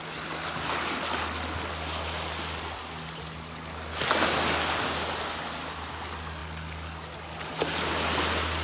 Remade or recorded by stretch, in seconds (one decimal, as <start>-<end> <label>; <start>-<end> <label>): 0.0-8.6 recorded